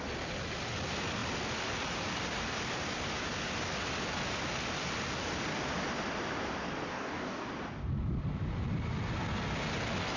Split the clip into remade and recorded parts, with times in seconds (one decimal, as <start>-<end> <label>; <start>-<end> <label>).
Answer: 0.0-6.9 recorded; 6.9-7.5 remade; 7.5-10.2 recorded